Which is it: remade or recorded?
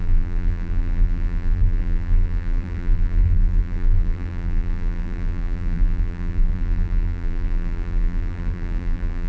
remade